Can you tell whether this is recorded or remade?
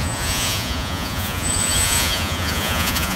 remade